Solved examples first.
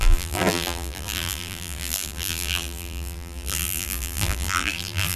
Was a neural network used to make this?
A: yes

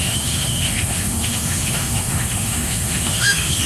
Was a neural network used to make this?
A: yes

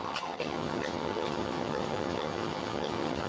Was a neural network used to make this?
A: yes